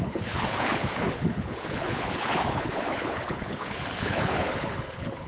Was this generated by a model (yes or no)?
yes